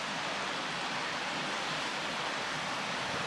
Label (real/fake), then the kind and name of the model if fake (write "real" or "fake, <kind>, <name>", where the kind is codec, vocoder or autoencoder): fake, vocoder, BigVGAN v2